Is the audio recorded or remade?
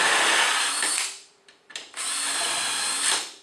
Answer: recorded